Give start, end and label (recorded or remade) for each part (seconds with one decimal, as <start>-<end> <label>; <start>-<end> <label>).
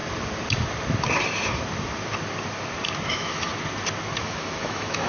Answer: 0.0-3.1 recorded; 3.1-3.5 remade; 3.5-4.2 recorded; 4.2-5.1 remade